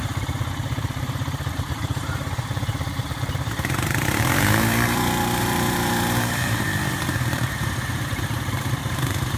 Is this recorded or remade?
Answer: remade